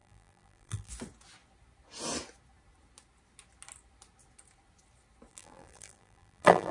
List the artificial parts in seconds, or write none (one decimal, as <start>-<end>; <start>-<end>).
0.0-0.9; 5.3-6.7

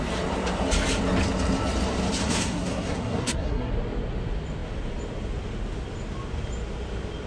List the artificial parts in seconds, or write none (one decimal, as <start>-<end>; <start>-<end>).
2.2-3.7